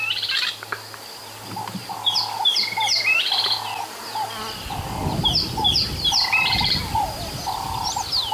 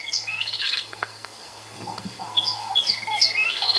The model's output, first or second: second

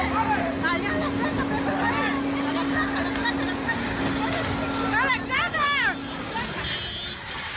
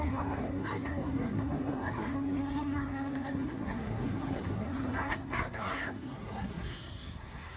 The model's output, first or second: second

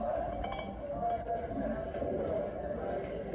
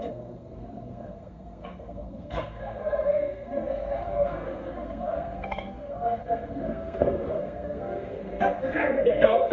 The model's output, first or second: second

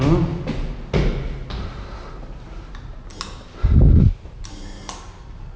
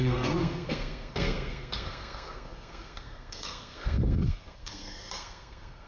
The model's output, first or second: second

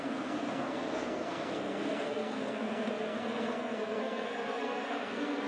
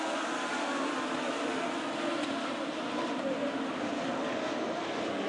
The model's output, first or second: first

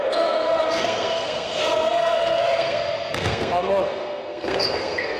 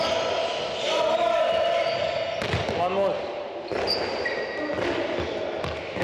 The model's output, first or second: first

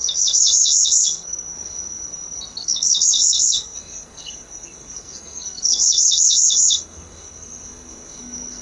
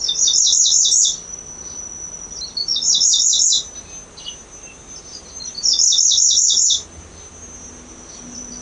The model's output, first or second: first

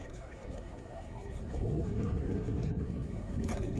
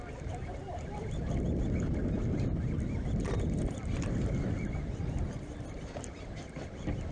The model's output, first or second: first